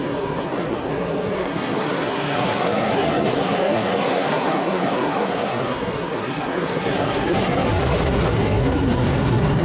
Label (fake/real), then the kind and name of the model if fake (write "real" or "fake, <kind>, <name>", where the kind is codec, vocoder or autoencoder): fake, codec, SNAC